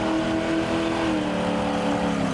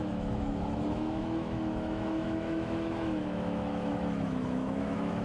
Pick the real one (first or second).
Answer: first